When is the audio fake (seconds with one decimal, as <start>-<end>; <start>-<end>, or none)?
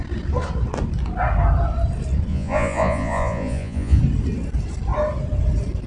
2.3-4.0